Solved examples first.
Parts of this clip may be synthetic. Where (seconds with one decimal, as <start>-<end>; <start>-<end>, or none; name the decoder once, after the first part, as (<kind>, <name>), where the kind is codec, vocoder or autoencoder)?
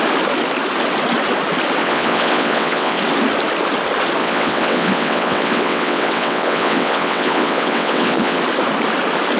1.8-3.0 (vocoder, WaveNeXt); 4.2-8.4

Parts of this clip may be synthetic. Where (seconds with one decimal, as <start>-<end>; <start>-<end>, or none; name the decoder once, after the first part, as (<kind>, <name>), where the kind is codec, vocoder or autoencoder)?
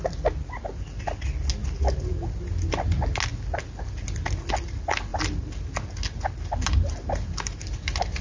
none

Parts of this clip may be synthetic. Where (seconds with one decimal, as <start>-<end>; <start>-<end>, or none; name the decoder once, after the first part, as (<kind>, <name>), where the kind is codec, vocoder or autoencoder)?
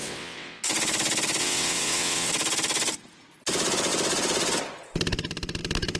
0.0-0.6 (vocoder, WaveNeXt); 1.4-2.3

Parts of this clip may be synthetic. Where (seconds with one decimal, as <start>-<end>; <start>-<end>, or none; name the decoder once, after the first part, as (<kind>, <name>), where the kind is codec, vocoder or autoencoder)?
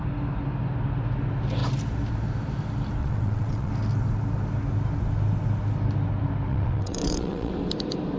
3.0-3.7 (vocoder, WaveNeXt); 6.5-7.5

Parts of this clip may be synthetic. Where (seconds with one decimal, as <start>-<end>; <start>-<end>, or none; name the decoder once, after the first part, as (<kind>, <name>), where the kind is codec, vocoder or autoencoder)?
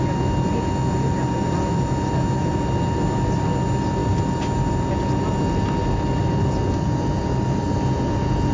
none